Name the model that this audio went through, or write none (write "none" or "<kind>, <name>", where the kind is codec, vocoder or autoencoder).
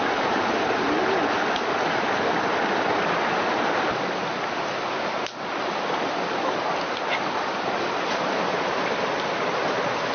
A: none